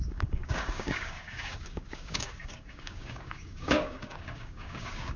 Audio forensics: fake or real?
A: fake